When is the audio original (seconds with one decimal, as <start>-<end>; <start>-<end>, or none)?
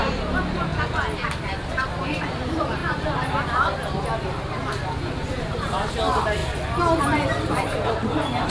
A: 0.7-2.0; 2.8-4.7; 6.4-7.0